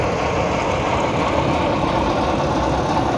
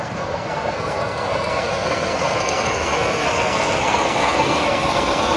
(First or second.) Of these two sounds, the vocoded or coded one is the second